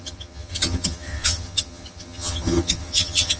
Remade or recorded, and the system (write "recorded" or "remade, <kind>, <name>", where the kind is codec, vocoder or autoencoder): remade, vocoder, HiFi-GAN